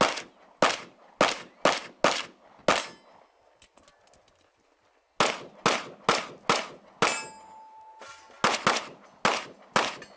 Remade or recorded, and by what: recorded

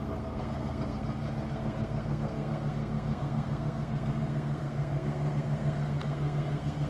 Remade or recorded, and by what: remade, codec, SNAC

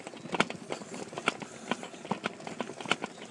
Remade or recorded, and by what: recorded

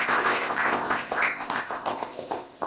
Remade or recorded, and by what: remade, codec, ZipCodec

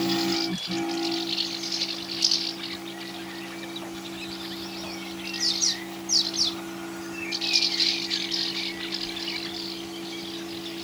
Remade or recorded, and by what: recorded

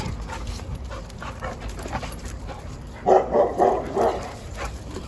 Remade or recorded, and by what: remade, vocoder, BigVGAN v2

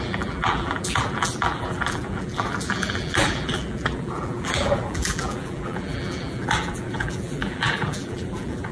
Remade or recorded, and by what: remade, vocoder, BigVGAN v2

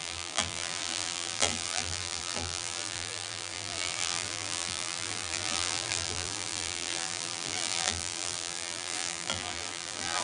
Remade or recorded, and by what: remade, vocoder, BigVGAN v2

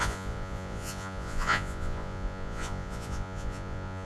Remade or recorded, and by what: remade, vocoder, Vocos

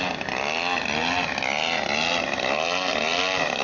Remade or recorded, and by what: recorded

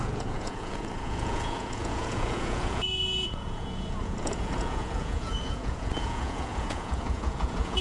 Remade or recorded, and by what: remade, vocoder, Vocos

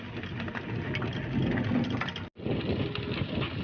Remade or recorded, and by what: recorded